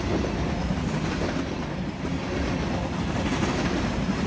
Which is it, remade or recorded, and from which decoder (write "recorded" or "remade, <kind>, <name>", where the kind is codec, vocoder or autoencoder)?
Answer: recorded